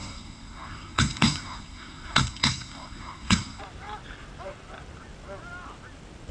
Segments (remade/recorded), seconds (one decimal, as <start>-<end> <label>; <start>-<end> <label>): 0.0-3.6 remade; 3.6-6.3 recorded